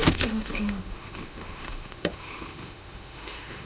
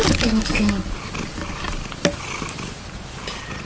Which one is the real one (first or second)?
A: second